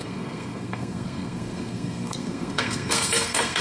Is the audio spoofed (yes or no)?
yes